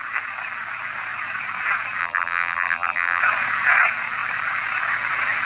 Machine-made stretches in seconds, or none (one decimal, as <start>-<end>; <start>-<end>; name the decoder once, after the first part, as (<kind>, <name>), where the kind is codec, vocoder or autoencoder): 2.0-3.2 (vocoder, BigVGAN v2)